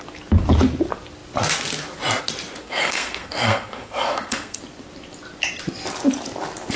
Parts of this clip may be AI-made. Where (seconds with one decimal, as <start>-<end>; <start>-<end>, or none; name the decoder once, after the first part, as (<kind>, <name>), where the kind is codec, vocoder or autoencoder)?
2.6-4.6 (codec, SNAC)